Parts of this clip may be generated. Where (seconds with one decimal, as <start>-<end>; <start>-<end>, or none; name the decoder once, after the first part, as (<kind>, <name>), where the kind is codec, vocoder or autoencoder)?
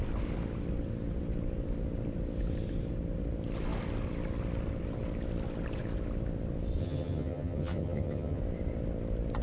6.8-8.4 (vocoder, HiFi-GAN)